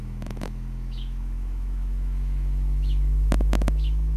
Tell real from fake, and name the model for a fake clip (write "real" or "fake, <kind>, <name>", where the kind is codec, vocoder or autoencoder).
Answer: fake, autoencoder, DAC-VAE